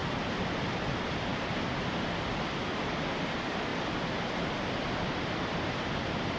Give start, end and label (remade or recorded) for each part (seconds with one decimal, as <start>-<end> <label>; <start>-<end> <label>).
0.0-6.4 recorded